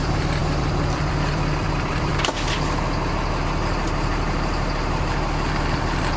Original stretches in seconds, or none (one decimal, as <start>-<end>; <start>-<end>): 2.1-5.6